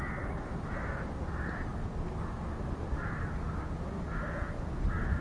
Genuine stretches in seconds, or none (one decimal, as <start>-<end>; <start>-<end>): 0.0-5.2